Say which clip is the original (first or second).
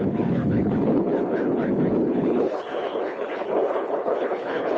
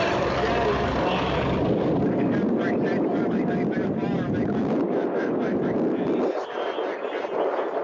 second